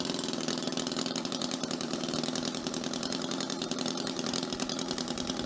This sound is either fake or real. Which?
fake